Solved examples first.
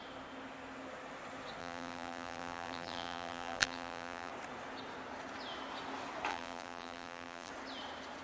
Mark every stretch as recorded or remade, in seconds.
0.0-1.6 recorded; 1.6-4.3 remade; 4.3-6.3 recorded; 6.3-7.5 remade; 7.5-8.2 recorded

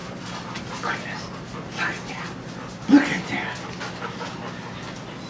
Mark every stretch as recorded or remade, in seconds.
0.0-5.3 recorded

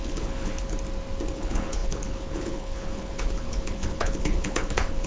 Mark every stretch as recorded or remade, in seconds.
0.0-0.5 remade; 0.5-1.3 recorded; 1.3-5.1 remade

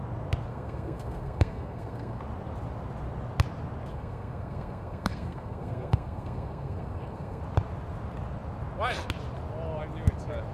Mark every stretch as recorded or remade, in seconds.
0.0-0.5 recorded; 0.5-2.2 remade; 2.2-3.9 recorded; 3.9-7.4 remade; 7.4-10.5 recorded

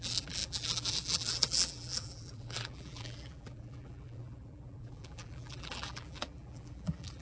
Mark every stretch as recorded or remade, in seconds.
0.0-7.2 remade